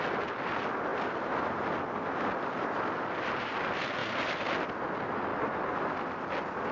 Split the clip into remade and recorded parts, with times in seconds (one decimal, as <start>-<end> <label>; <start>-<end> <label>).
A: 0.0-6.7 recorded